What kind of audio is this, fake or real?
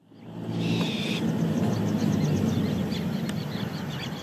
real